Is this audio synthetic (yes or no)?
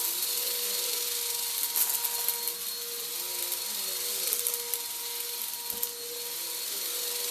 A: no